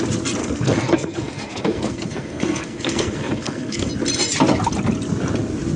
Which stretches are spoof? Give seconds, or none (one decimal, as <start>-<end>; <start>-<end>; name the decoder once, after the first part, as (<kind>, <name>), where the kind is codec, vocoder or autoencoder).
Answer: 0.4-3.9 (codec, SNAC)